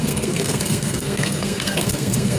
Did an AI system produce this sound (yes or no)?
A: yes